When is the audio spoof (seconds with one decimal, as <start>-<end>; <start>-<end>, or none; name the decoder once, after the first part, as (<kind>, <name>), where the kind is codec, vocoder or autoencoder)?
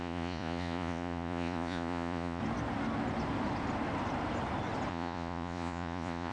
0.0-2.4 (vocoder, Vocos); 4.9-6.3